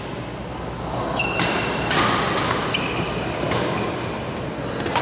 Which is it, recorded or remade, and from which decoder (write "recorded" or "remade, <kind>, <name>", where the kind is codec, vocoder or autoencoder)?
recorded